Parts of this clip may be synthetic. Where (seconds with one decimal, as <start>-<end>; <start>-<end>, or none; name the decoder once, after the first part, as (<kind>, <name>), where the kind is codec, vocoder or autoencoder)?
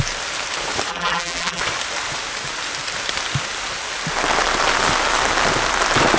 0.9-1.6 (vocoder, BigVGAN v2)